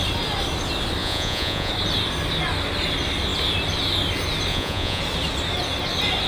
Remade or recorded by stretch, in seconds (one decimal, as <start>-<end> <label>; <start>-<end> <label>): 0.0-1.0 recorded; 1.0-1.7 remade; 1.7-4.5 recorded; 4.5-5.0 remade; 5.0-6.3 recorded

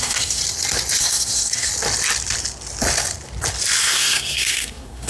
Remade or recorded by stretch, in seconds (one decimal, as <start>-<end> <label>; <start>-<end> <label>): 0.0-0.4 remade; 0.4-1.0 recorded; 1.0-1.7 remade; 1.7-3.8 recorded; 3.8-5.1 remade

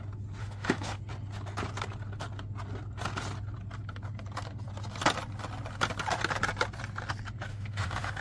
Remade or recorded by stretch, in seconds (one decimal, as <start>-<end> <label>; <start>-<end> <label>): 0.0-0.4 recorded; 0.4-1.0 remade; 1.0-7.5 recorded; 7.5-8.2 remade

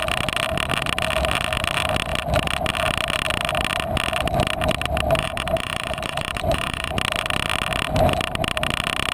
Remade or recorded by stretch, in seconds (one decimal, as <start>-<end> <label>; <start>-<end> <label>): 0.0-5.2 recorded; 5.2-6.9 remade; 6.9-9.1 recorded

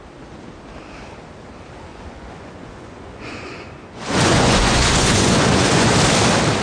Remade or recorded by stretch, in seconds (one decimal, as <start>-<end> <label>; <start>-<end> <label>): 0.0-1.9 recorded; 1.9-5.9 remade; 5.9-6.6 recorded

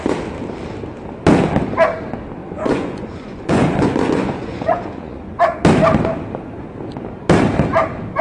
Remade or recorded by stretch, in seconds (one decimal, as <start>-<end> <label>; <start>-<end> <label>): 0.0-2.4 recorded; 2.4-5.4 remade; 5.4-8.2 recorded

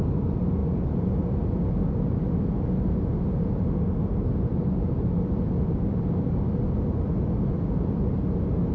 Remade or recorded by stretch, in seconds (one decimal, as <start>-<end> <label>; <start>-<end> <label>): 0.0-0.6 recorded; 0.6-1.6 remade; 1.6-8.7 recorded

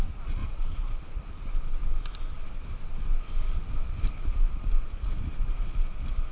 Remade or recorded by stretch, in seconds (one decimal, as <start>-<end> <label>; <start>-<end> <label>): 0.0-0.4 recorded; 0.4-1.3 remade; 1.3-3.1 recorded; 3.1-5.6 remade; 5.6-6.3 recorded